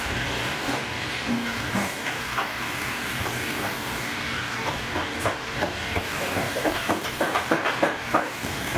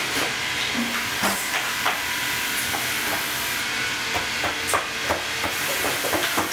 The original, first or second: second